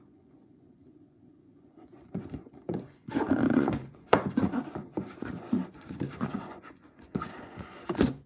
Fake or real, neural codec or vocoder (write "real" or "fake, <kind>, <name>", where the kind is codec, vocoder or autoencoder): fake, vocoder, Vocos